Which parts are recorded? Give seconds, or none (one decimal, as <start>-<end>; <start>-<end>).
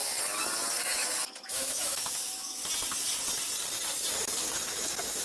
0.0-0.8; 2.6-4.6